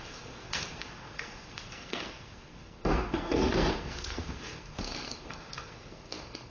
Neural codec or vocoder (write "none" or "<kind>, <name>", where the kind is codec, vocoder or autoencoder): codec, SNAC